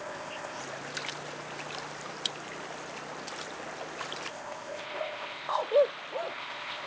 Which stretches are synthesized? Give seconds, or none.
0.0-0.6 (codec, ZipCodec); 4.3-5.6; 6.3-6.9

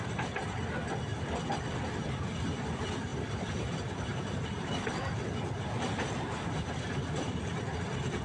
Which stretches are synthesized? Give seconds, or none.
1.1-2.0 (vocoder, BigVGAN v2); 3.1-8.2

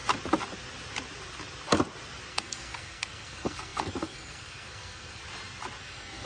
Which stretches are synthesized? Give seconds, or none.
2.3-5.2 (codec, SNAC); 5.8-6.3

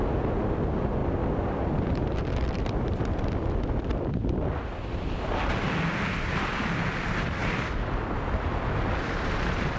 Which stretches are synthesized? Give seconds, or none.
1.0-4.3 (vocoder, BigVGAN v2)

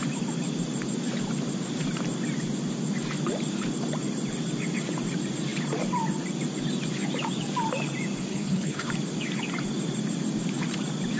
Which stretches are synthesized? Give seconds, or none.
8.3-8.9 (codec, HILCodec)

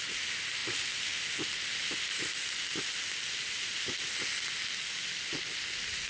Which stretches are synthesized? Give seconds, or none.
none